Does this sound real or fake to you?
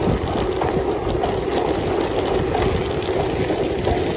real